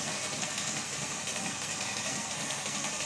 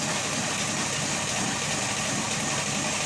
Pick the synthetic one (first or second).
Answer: first